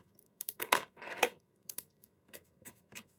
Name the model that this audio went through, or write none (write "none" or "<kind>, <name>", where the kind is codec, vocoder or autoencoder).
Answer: codec, SNAC